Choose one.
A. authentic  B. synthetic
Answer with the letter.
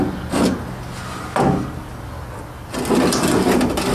A